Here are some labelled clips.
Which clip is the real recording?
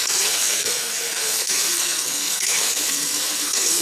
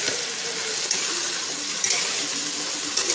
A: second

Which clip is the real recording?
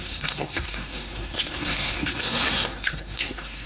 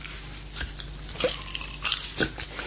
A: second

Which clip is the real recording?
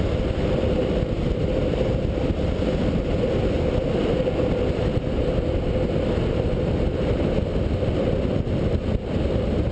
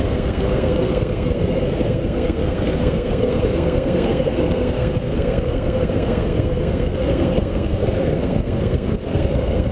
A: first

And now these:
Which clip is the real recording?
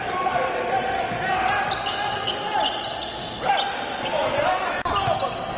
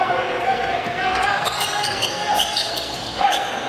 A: first